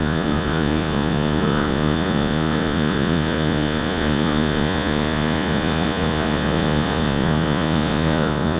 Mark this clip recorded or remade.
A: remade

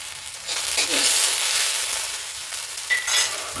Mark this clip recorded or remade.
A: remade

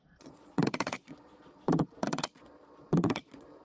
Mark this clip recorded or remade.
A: remade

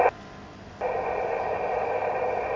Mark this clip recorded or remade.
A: recorded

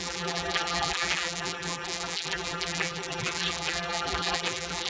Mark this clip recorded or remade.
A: remade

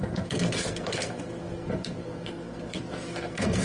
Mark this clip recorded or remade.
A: remade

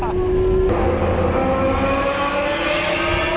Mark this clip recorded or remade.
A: recorded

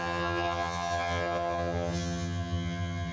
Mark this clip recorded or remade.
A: remade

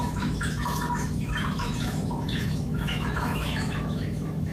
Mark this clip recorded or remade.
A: remade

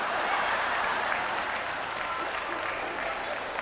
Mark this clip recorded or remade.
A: remade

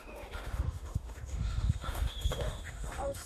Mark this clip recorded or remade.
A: remade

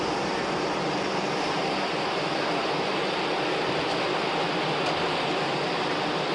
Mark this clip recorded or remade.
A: recorded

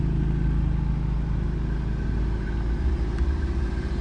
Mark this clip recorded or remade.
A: recorded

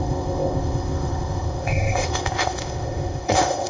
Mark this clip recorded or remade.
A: remade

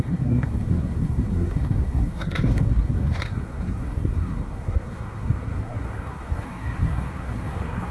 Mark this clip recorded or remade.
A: remade